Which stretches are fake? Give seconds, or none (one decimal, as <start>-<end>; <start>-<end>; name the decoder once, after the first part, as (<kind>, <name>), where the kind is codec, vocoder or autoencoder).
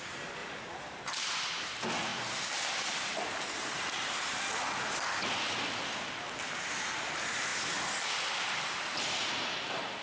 0.4-1.5 (vocoder, BigVGAN v2); 2.1-4.4